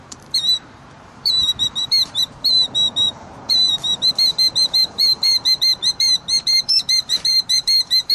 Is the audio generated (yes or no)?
yes